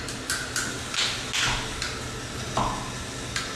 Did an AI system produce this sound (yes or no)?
no